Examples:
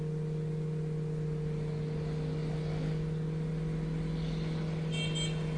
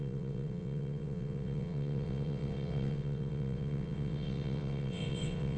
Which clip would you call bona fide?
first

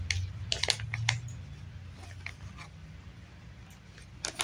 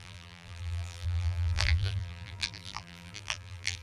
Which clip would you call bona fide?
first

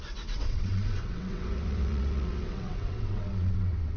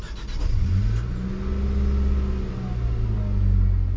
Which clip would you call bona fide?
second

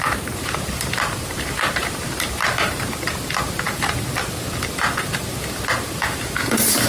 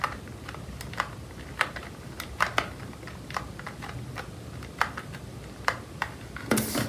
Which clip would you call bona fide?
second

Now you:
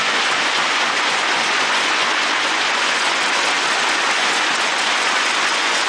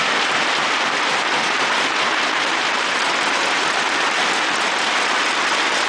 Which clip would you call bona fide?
second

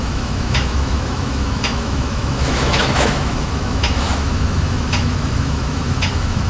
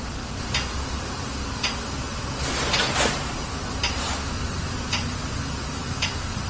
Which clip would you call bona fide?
second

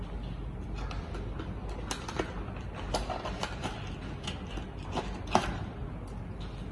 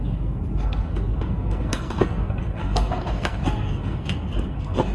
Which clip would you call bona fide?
first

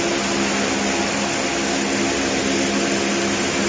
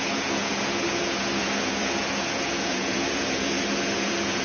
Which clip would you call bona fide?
first